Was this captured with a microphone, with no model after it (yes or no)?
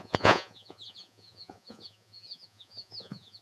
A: no